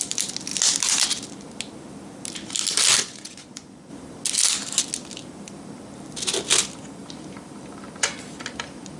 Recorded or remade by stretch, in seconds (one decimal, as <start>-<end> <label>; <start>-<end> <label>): 0.0-3.0 recorded; 3.0-3.9 remade; 3.9-9.0 recorded